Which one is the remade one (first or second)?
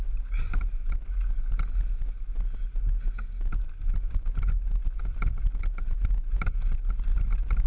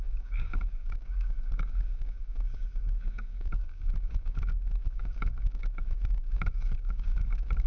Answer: second